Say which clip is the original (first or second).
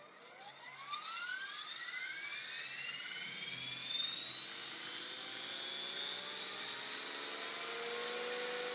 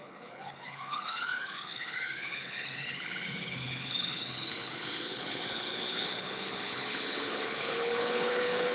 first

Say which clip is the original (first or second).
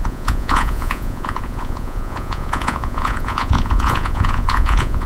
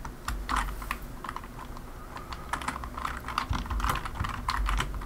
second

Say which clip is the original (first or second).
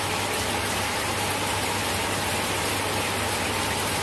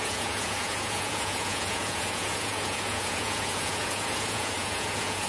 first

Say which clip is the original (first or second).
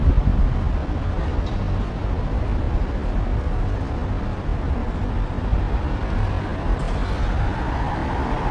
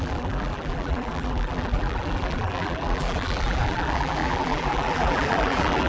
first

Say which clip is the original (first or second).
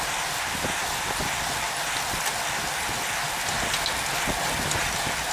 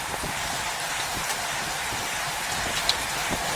first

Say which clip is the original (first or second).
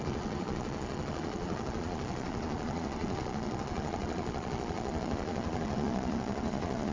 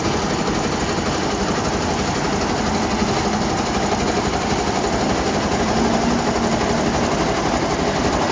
second